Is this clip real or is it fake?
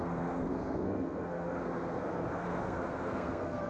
fake